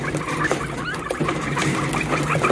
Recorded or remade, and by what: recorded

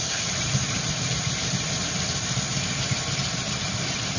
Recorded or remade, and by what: remade, vocoder, BigVGAN v2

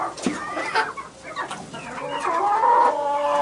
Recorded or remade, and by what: recorded